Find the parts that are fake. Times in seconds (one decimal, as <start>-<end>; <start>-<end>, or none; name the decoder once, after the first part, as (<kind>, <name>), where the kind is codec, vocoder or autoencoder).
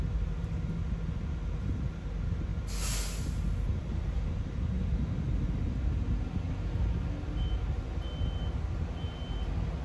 none